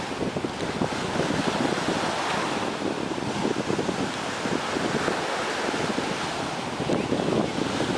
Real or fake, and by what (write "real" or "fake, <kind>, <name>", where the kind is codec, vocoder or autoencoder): real